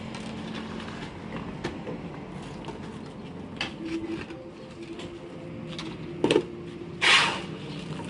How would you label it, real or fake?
real